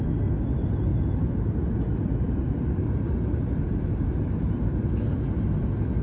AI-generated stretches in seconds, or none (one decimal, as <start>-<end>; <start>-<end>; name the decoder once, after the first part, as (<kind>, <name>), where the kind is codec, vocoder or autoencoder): 0.9-4.5 (vocoder, BigVGAN v2)